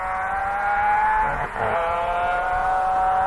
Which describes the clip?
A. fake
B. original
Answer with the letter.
A